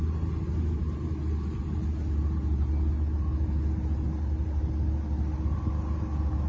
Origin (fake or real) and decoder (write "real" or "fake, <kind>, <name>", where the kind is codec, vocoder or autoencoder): real